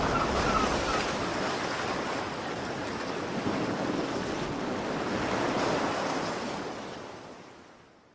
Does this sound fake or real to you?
real